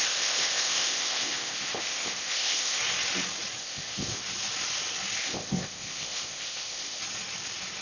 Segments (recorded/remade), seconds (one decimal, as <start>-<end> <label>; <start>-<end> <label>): 0.0-2.8 remade; 2.8-3.6 recorded; 3.6-4.2 remade; 4.2-5.2 recorded; 5.2-7.0 remade; 7.0-7.8 recorded